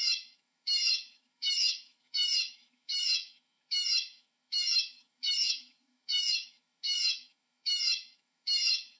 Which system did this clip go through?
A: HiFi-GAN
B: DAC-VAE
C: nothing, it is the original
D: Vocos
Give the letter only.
B